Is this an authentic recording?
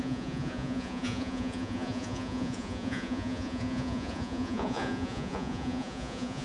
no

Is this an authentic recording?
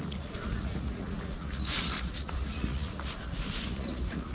no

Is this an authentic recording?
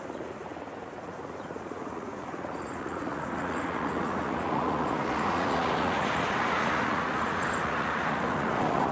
no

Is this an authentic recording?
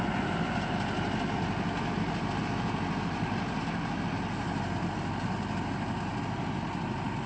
yes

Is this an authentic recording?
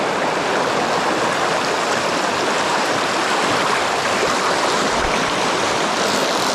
yes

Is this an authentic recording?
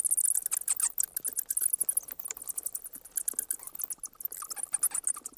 yes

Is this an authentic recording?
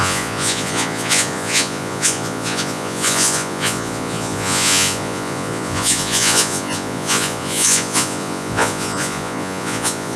no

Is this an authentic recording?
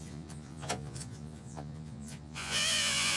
no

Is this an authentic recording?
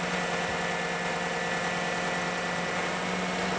yes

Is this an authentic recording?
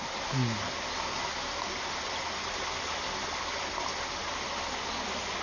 yes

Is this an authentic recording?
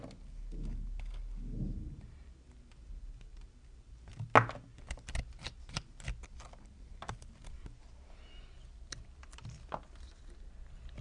yes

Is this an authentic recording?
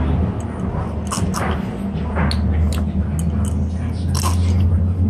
yes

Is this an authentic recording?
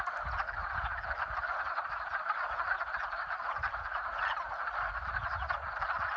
yes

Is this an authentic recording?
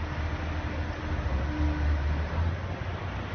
yes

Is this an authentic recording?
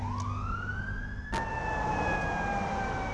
yes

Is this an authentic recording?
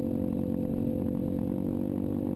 yes